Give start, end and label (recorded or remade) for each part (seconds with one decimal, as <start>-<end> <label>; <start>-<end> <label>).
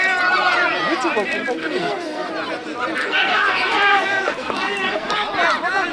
0.0-1.6 recorded; 1.6-2.3 remade; 2.3-3.0 recorded; 3.0-5.1 remade; 5.1-5.9 recorded